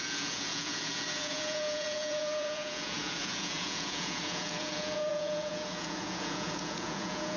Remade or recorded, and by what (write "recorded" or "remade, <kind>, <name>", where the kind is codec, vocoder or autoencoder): remade, vocoder, Vocos